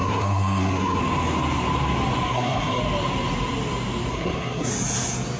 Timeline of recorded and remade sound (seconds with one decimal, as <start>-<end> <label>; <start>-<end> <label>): 0.0-1.0 remade; 1.0-2.3 recorded; 2.3-2.8 remade; 2.8-4.1 recorded; 4.1-4.7 remade; 4.7-5.4 recorded

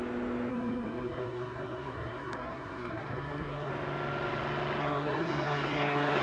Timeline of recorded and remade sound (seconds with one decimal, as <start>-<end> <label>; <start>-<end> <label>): 0.0-0.5 recorded; 0.5-3.7 remade; 3.7-4.8 recorded; 4.8-6.2 remade

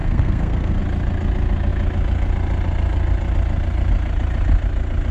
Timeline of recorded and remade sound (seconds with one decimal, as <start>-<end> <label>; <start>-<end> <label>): 0.0-0.8 remade; 0.8-5.1 recorded

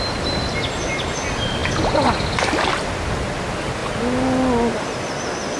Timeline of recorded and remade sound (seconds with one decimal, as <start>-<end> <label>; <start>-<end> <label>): 0.0-5.6 recorded

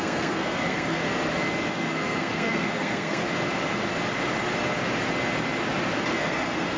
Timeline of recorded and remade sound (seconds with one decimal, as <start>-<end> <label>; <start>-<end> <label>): 0.0-1.0 remade; 1.0-1.7 recorded; 1.7-3.2 remade; 3.2-6.1 recorded; 6.1-6.8 remade

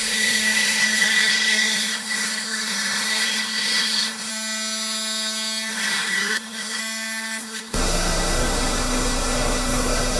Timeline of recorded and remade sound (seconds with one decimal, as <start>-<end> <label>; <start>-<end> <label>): 0.0-4.3 remade; 4.3-5.7 recorded; 5.7-6.8 remade; 6.8-7.4 recorded; 7.4-10.2 remade